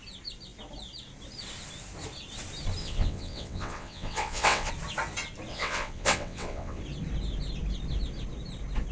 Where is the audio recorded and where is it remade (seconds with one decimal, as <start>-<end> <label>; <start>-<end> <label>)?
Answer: 0.0-2.8 recorded; 2.8-4.7 remade; 4.7-5.5 recorded; 5.5-6.8 remade; 6.8-8.9 recorded

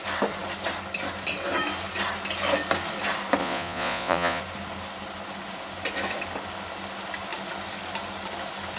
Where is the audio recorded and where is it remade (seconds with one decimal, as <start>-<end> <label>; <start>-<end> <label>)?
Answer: 0.0-3.4 recorded; 3.4-4.4 remade; 4.4-8.8 recorded